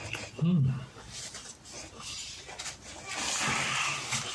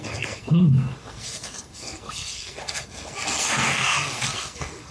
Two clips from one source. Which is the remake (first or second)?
second